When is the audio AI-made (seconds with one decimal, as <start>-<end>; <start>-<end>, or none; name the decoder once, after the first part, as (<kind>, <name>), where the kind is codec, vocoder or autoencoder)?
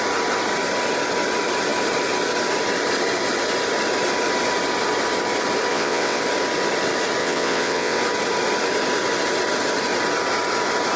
5.7-6.2 (vocoder, WaveNeXt); 7.2-8.0